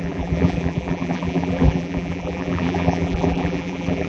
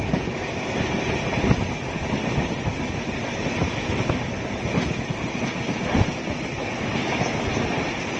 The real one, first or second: second